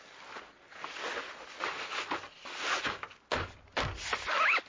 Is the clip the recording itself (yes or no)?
yes